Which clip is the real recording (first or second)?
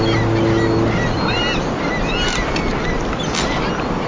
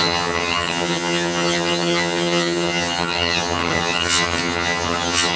first